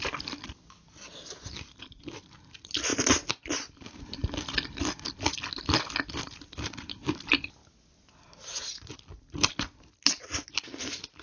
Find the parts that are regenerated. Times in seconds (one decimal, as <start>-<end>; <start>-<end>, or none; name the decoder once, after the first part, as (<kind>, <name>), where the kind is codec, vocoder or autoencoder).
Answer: none